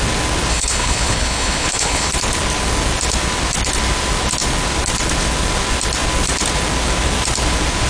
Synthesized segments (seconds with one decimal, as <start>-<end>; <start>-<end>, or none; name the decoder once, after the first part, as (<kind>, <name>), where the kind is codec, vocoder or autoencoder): 0.5-2.1 (codec, HILCodec)